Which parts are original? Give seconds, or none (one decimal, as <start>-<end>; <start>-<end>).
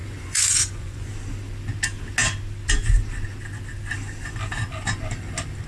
1.1-5.7